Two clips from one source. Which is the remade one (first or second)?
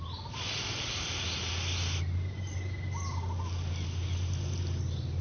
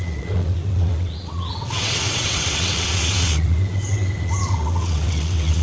second